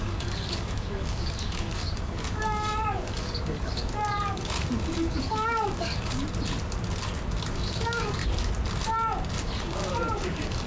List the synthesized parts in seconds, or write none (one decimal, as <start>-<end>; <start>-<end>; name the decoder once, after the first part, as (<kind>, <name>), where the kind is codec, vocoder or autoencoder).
0.0-6.2 (codec, DAC); 7.5-8.2; 9.4-10.7

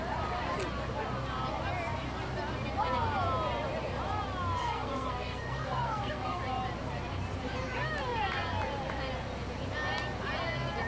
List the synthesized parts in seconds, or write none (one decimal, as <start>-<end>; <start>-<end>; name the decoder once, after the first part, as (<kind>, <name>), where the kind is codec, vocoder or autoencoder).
4.6-6.4 (codec, SNAC)